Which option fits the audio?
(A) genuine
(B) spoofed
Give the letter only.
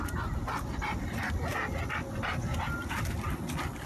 A